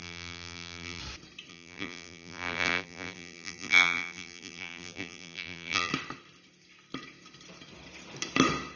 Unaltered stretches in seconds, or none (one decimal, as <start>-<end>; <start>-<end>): 1.0-1.5; 5.9-8.8